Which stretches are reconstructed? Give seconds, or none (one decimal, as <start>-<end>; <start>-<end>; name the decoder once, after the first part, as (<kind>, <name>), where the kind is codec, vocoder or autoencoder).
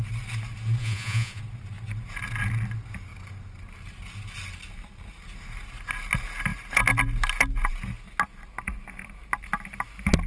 0.8-1.4 (vocoder, Vocos)